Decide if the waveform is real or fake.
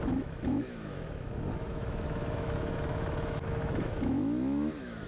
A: fake